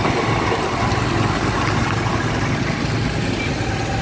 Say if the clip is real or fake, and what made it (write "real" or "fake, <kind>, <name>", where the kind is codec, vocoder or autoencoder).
real